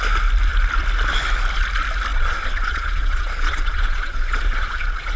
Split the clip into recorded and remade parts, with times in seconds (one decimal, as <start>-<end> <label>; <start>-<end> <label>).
0.0-2.1 recorded; 2.1-5.2 remade